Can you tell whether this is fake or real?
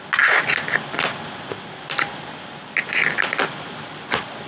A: real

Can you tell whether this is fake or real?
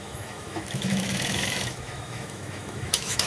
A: fake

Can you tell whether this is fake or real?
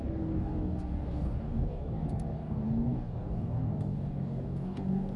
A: fake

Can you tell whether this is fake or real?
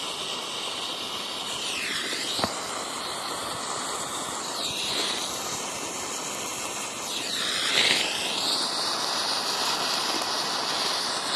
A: real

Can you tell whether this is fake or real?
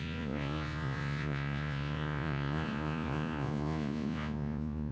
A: fake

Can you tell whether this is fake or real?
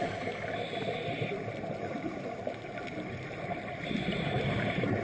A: real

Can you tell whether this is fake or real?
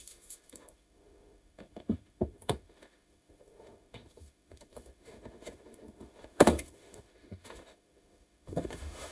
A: fake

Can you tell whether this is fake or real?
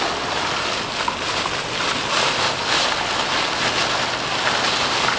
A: real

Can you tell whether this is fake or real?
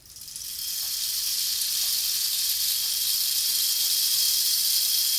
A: real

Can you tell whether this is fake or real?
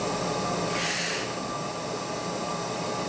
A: real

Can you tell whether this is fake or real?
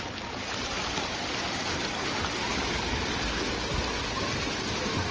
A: real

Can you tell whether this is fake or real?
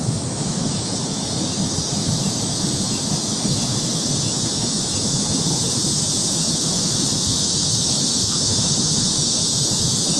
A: fake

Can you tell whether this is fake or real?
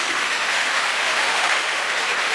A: fake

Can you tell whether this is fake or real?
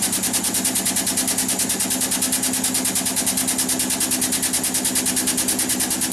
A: real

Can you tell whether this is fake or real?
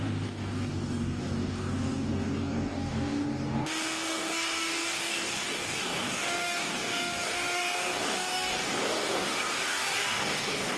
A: fake